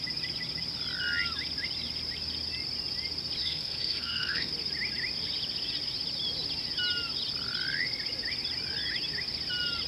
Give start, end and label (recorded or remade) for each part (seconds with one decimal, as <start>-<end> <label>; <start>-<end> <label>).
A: 0.0-3.4 recorded; 3.4-4.5 remade; 4.5-9.9 recorded